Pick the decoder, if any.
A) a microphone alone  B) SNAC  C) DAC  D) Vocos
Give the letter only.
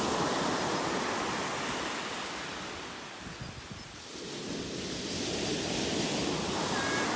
A